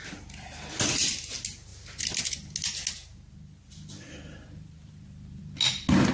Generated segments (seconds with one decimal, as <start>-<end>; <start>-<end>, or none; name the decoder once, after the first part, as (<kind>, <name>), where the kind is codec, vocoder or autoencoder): none